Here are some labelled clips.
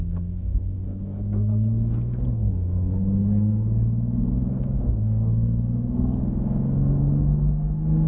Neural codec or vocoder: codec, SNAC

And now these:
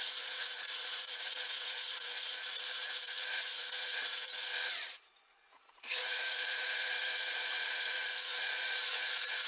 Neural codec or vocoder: vocoder, Vocos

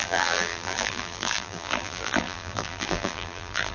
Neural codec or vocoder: vocoder, BigVGAN v2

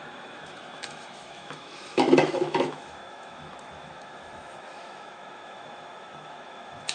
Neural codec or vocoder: autoencoder, DAC-VAE